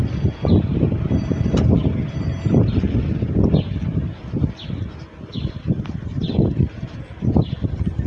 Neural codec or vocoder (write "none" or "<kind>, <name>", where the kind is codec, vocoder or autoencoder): vocoder, BigVGAN v2